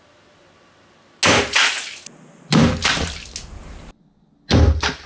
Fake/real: real